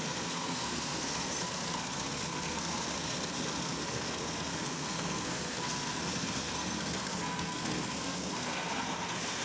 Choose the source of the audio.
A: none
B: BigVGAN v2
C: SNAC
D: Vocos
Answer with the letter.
C